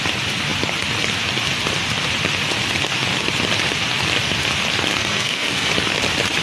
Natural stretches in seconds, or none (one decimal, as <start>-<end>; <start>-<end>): 0.0-4.9; 5.7-6.4